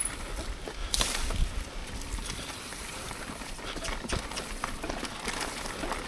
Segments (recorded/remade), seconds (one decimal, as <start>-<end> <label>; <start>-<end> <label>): 0.0-0.8 recorded; 0.8-1.4 remade; 1.4-1.8 recorded; 1.8-4.2 remade; 4.2-6.1 recorded

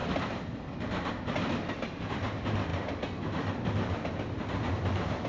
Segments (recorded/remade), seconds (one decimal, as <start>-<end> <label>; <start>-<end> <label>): 0.0-5.3 recorded

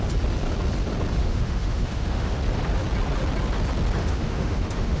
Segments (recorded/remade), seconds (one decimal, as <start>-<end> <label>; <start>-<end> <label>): 0.0-1.2 recorded; 1.2-2.4 remade; 2.4-4.0 recorded; 4.0-5.0 remade

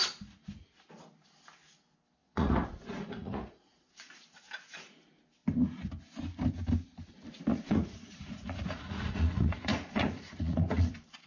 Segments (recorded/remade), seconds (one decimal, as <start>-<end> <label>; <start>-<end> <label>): 0.0-2.2 recorded; 2.2-5.0 remade; 5.0-7.5 recorded; 7.5-10.9 remade; 10.9-11.3 recorded

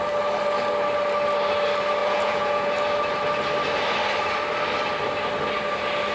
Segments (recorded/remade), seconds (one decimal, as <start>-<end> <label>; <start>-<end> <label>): 0.0-2.0 recorded; 2.0-2.7 remade; 2.7-6.1 recorded